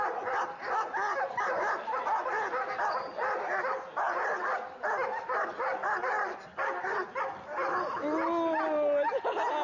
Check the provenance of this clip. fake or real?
real